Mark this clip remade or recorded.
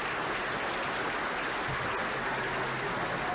recorded